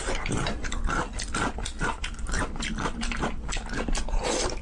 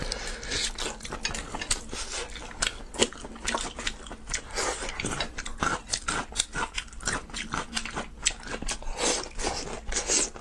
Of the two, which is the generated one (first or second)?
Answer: first